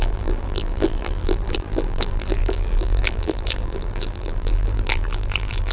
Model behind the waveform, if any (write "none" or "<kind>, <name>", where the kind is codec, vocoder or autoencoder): vocoder, BigVGAN v2